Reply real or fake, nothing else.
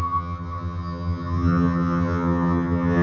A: fake